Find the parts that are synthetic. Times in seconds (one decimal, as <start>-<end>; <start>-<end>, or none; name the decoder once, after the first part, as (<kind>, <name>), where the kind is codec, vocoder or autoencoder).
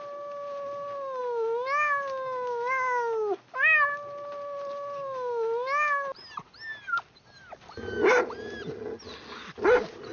none